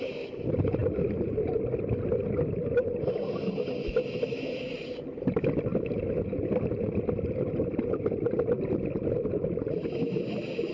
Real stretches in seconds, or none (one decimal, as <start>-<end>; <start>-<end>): 0.0-10.7